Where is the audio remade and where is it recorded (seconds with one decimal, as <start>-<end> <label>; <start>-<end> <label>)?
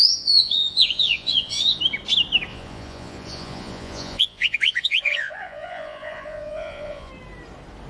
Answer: 0.0-1.8 remade; 1.8-2.5 recorded; 2.5-7.1 remade; 7.1-7.9 recorded